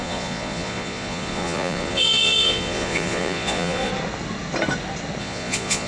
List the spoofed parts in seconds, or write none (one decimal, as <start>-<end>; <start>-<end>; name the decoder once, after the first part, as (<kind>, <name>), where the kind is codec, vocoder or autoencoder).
0.0-3.9 (vocoder, Vocos); 5.2-5.9

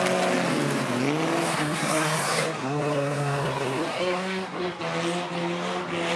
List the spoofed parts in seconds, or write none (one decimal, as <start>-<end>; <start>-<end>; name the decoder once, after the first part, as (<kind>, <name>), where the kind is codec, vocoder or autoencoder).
1.5-4.8 (codec, SNAC)

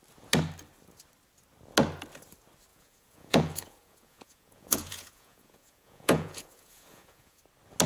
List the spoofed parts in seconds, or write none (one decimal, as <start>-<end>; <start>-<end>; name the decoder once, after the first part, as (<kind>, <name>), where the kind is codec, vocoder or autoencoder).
2.7-7.4 (vocoder, Vocos)

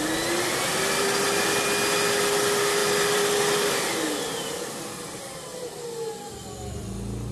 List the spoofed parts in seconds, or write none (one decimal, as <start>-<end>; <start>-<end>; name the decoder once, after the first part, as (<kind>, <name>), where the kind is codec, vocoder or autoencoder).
0.7-1.2 (vocoder, BigVGAN v2); 2.8-3.9; 5.5-6.3

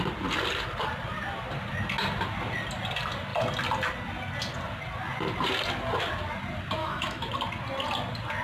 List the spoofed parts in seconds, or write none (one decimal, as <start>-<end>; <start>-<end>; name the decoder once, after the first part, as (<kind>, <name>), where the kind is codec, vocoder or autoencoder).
6.8-7.3 (autoencoder, DAC-VAE)

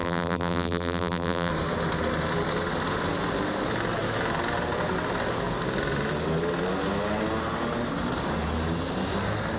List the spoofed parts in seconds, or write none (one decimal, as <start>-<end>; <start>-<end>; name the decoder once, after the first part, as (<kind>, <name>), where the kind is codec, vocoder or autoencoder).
0.0-1.5 (vocoder, BigVGAN v2)